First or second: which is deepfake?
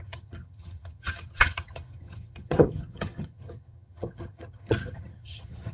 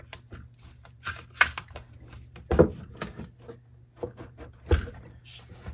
first